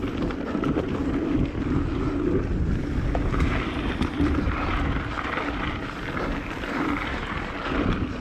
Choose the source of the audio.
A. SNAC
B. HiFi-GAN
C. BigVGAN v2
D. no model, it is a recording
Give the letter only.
D